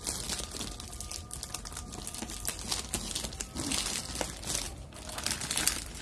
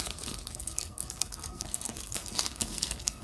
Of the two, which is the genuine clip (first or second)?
first